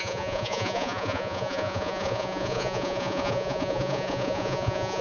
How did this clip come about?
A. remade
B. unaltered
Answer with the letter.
A